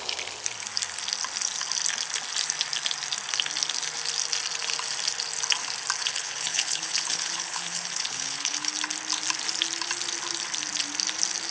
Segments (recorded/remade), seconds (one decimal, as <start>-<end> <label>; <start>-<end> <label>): 0.0-6.0 recorded; 6.0-8.7 remade; 8.7-11.5 recorded